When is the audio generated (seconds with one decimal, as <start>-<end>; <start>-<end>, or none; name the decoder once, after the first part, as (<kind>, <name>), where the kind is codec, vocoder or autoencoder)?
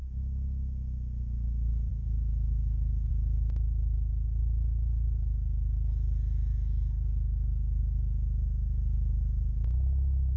1.9-3.1 (codec, DAC); 6.5-8.1